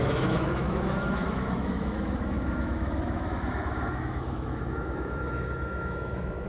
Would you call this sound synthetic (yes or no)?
yes